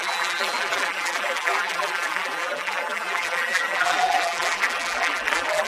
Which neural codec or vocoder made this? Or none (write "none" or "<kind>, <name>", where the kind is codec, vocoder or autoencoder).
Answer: vocoder, BigVGAN v2